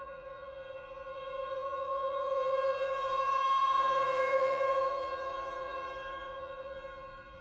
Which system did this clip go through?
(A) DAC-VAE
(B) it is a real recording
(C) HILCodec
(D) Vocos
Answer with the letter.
D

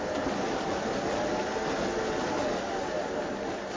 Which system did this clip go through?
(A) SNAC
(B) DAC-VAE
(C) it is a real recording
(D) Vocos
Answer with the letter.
C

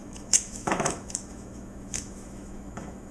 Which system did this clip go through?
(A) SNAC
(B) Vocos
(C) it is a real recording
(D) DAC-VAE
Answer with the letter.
D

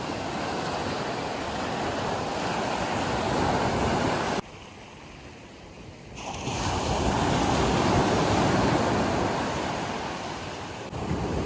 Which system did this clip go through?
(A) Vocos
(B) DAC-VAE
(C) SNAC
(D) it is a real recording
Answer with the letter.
D